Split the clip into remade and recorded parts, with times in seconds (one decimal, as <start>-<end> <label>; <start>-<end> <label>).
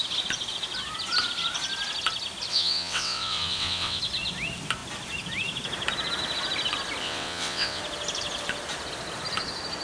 0.0-2.5 recorded; 2.5-4.0 remade; 4.0-7.0 recorded; 7.0-7.8 remade; 7.8-9.8 recorded